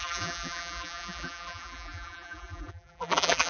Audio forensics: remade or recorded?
remade